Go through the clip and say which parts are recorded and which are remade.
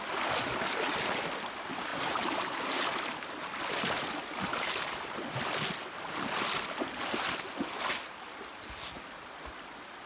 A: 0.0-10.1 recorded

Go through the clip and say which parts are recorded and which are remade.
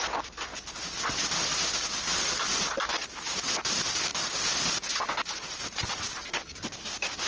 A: 0.0-7.3 recorded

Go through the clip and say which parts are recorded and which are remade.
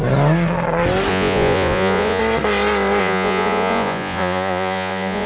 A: 0.0-1.1 recorded; 1.1-2.2 remade; 2.2-3.0 recorded; 3.0-5.3 remade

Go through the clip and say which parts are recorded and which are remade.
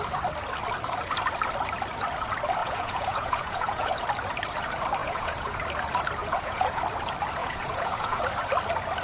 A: 0.0-2.6 recorded; 2.6-3.9 remade; 3.9-5.0 recorded; 5.0-5.6 remade; 5.6-6.2 recorded; 6.2-6.8 remade; 6.8-7.4 recorded; 7.4-8.2 remade; 8.2-9.0 recorded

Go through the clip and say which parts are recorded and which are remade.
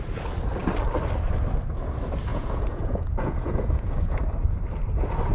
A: 0.0-2.3 recorded; 2.3-4.2 remade; 4.2-5.3 recorded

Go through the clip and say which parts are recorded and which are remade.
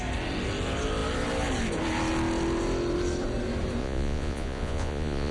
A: 0.0-3.8 recorded; 3.8-5.3 remade